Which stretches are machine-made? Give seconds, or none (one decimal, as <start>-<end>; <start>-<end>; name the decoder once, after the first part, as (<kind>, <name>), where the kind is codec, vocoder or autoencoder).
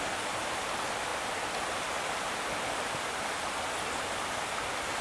none